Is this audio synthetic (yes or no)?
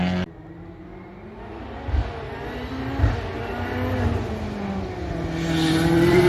no